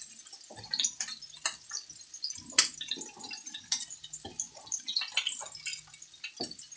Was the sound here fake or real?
real